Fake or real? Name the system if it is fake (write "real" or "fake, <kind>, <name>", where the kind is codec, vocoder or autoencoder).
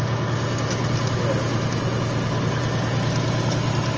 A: real